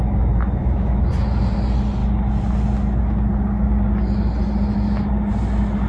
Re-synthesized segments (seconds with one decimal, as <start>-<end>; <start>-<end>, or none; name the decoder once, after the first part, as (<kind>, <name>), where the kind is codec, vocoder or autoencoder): 0.6-1.1 (autoencoder, DAC-VAE)